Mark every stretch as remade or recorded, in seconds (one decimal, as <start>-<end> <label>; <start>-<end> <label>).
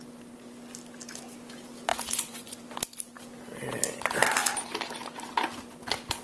0.0-1.9 recorded; 1.9-2.6 remade; 2.6-6.2 recorded